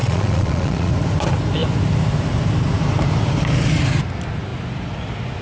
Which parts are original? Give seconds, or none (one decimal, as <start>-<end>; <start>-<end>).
0.9-5.4